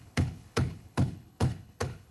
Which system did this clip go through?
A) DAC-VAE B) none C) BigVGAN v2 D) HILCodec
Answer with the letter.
D